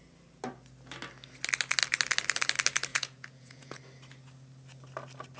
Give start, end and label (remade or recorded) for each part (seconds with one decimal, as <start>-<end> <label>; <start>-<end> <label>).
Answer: 0.0-2.9 recorded; 2.9-3.8 remade; 3.8-5.4 recorded